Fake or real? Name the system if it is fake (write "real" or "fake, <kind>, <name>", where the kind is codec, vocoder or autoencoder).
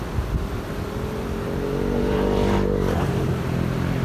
real